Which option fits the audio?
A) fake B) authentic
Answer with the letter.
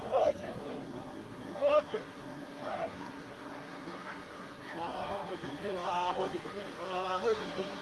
A